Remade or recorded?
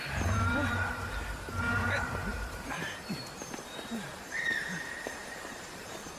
remade